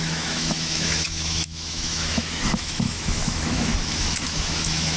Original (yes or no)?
no